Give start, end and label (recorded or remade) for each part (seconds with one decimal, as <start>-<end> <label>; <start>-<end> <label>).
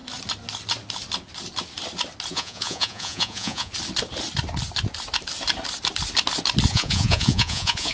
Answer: 0.0-2.3 recorded; 2.3-3.7 remade; 3.7-6.7 recorded; 6.7-7.9 remade